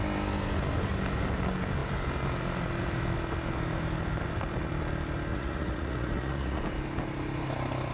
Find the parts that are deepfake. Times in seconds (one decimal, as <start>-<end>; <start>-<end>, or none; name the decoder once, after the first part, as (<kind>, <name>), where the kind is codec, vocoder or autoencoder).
5.3-6.6 (vocoder, Vocos)